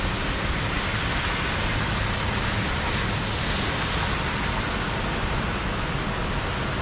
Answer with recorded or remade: recorded